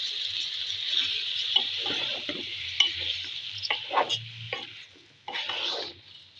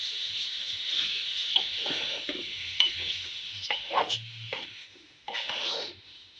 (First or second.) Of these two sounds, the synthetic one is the second